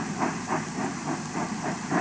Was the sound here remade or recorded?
recorded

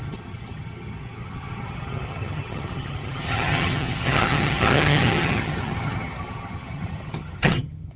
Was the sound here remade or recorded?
remade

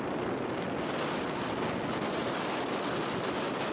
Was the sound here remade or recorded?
recorded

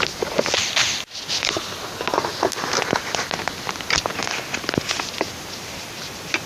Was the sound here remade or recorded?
recorded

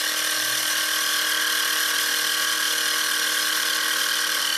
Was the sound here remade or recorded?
recorded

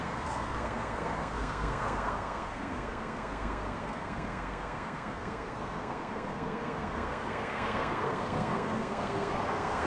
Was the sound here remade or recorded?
remade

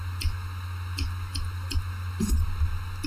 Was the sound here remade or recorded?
recorded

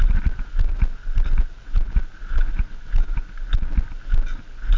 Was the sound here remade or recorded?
recorded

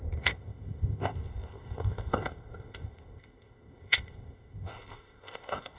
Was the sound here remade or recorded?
remade